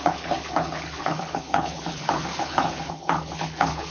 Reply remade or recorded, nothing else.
remade